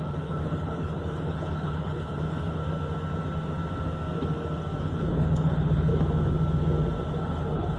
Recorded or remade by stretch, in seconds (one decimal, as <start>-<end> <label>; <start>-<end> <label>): 0.0-2.6 remade; 2.6-4.8 recorded; 4.8-5.9 remade; 5.9-7.2 recorded; 7.2-7.8 remade